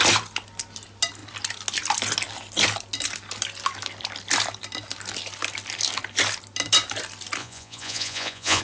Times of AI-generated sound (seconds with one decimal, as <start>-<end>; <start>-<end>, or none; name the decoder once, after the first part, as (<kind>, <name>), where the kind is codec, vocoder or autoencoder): 7.4-8.6 (vocoder, Vocos)